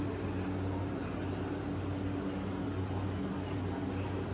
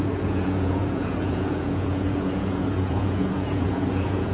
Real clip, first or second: first